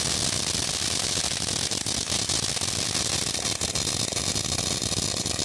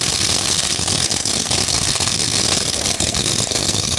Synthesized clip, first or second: second